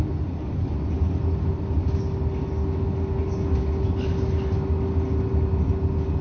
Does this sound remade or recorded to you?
recorded